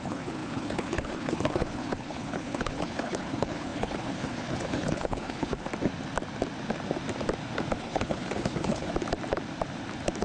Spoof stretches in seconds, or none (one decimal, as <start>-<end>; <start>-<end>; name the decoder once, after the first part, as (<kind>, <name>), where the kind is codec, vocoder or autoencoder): 0.0-5.7 (codec, HILCodec); 7.8-8.9